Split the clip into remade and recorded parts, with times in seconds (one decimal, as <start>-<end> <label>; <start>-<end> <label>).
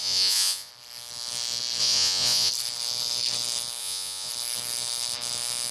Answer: 0.0-0.7 remade; 0.7-1.8 recorded; 1.8-2.5 remade; 2.5-3.8 recorded; 3.8-4.3 remade; 4.3-5.7 recorded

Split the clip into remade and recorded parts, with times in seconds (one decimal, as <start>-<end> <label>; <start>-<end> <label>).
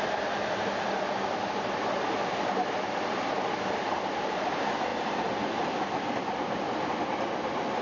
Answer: 0.0-7.8 recorded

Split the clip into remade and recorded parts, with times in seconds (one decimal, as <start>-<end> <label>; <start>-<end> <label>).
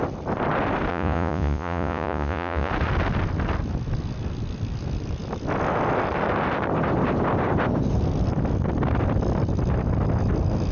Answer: 0.0-0.9 recorded; 0.9-2.7 remade; 2.7-10.7 recorded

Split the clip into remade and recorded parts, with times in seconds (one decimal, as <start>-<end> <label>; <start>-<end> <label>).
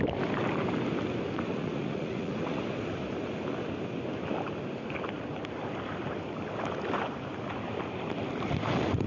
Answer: 0.0-1.5 recorded; 1.5-2.6 remade; 2.6-9.1 recorded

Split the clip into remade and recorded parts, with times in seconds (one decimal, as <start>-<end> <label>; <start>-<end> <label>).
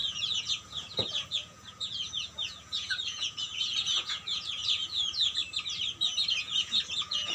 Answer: 0.0-5.4 remade; 5.4-6.4 recorded; 6.4-7.3 remade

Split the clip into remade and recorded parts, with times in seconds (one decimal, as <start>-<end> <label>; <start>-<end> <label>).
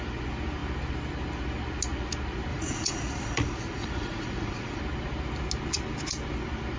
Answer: 0.0-2.5 recorded; 2.5-4.8 remade; 4.8-6.8 recorded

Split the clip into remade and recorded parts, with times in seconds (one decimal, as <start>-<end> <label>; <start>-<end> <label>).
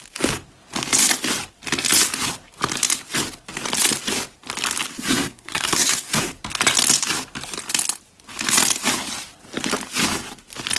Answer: 0.0-4.9 recorded; 4.9-6.3 remade; 6.3-10.8 recorded